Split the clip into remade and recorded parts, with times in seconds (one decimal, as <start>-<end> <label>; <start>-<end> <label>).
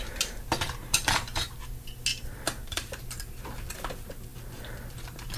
0.0-0.8 recorded; 0.8-1.5 remade; 1.5-2.1 recorded; 2.1-3.0 remade; 3.0-5.4 recorded